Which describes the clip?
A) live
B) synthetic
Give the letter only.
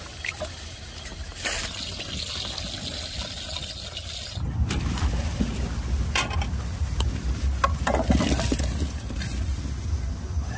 A